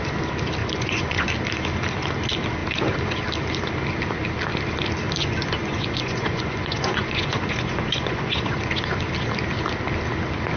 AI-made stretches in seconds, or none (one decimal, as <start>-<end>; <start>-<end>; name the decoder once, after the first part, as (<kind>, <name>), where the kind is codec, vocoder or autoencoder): 0.6-1.3 (vocoder, Vocos); 5.2-8.6

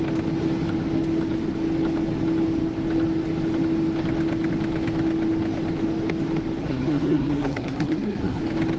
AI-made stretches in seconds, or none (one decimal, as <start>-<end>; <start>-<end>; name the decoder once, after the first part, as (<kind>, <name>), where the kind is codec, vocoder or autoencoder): 6.6-8.4 (codec, SNAC)

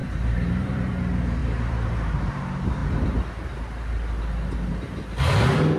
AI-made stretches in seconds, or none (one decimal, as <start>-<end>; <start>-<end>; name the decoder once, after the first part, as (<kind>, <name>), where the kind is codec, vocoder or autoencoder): 0.0-0.8 (vocoder, BigVGAN v2); 1.4-2.2

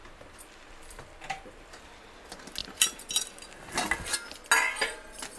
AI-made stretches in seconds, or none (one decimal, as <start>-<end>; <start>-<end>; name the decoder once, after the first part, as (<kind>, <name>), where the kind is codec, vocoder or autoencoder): 0.0-1.8 (vocoder, BigVGAN v2); 2.6-3.3

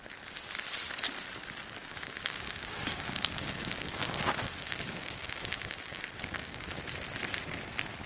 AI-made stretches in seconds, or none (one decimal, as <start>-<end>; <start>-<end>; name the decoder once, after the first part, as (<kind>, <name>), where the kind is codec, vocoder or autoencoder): 1.9-6.8 (codec, DAC)